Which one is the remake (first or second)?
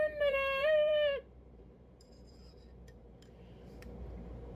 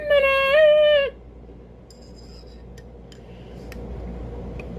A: first